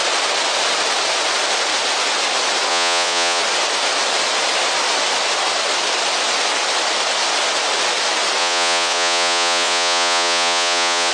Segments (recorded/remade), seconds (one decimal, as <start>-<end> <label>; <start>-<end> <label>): 0.0-2.7 recorded; 2.7-3.4 remade; 3.4-8.4 recorded; 8.4-11.1 remade